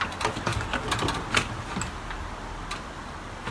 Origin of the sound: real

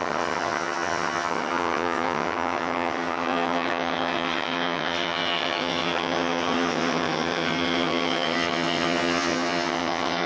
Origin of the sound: fake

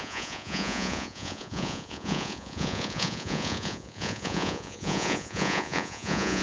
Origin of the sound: fake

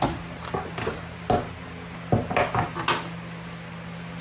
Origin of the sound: real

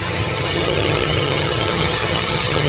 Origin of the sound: fake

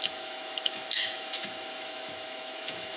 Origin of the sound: fake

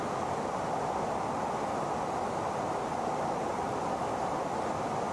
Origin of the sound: real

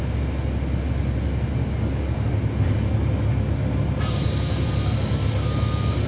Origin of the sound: real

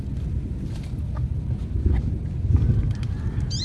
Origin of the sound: real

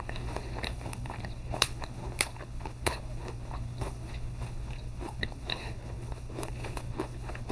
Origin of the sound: fake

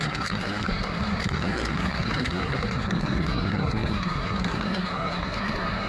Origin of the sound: fake